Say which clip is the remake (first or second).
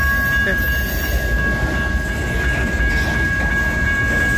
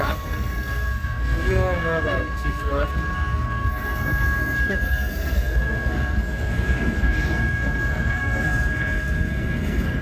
second